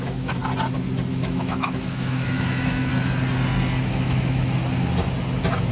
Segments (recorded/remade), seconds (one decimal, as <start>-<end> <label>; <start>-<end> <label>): 0.0-0.4 remade; 0.4-1.1 recorded; 1.1-2.9 remade; 2.9-3.9 recorded; 3.9-4.6 remade; 4.6-5.7 recorded